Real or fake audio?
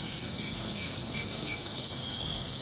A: fake